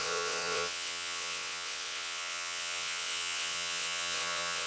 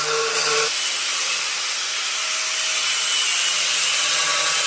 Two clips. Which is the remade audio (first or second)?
first